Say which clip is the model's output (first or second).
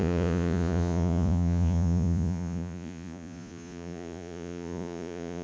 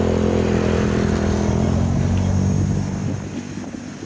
first